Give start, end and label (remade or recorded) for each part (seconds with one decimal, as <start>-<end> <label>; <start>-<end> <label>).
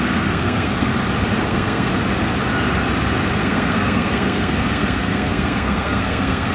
0.0-0.9 remade; 0.9-1.4 recorded; 1.4-1.9 remade; 1.9-3.4 recorded; 3.4-6.5 remade